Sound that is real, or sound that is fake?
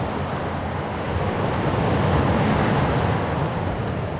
real